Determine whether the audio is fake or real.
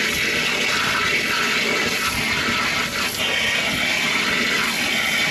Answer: real